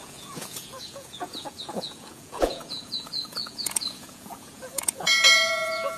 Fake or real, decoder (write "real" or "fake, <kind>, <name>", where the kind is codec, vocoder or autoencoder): fake, vocoder, Vocos